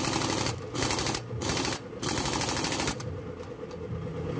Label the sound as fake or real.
real